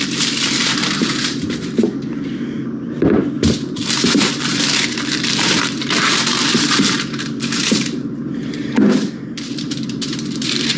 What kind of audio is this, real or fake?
fake